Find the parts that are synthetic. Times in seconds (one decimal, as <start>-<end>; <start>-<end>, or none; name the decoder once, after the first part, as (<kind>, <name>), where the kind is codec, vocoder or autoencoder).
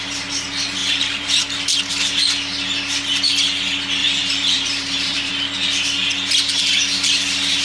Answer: 0.8-1.4 (vocoder, BigVGAN v2); 4.0-5.3